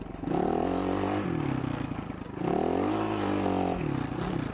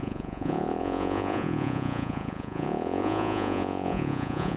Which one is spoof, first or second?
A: second